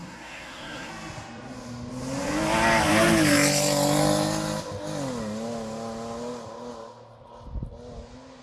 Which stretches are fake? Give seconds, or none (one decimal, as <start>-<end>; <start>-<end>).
0.0-0.9